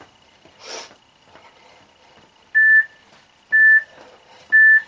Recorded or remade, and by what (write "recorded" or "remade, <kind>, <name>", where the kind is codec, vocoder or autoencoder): recorded